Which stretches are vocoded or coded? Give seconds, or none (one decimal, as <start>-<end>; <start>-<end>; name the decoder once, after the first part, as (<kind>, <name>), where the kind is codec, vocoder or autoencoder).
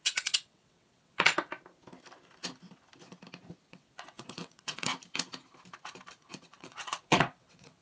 0.0-1.5 (vocoder, WaveNeXt); 3.7-4.9; 6.2-7.8